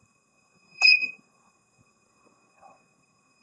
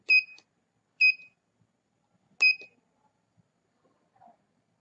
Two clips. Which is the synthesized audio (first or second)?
first